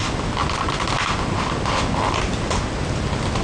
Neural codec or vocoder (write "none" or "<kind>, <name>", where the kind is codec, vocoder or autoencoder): none